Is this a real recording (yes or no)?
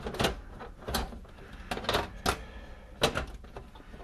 yes